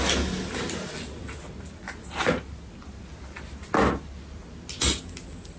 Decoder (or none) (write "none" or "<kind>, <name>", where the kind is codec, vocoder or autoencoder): none